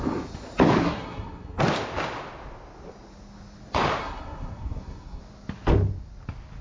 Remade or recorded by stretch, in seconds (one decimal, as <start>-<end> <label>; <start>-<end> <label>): 0.0-0.8 recorded; 0.8-1.6 remade; 1.6-4.0 recorded; 4.0-5.2 remade; 5.2-6.6 recorded